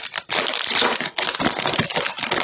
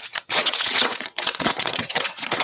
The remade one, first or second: second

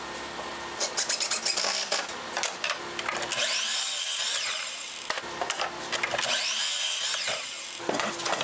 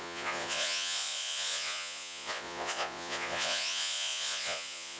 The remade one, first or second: second